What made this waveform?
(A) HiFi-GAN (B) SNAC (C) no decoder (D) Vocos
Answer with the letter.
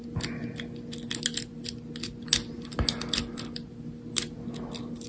C